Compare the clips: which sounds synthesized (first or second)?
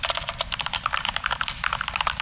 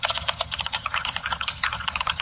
second